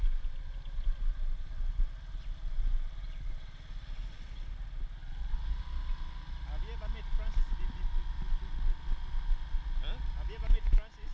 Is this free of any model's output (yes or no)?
yes